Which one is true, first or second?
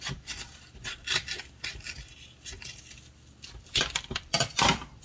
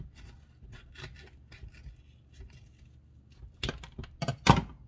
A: second